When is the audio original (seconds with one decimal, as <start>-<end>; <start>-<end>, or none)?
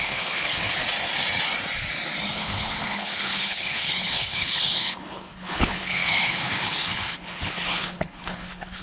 0.8-2.3